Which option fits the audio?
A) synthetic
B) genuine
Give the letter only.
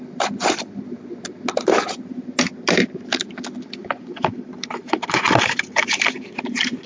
B